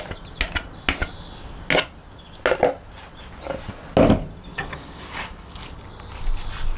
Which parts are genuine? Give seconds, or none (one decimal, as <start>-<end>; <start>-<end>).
0.0-4.5; 5.6-6.8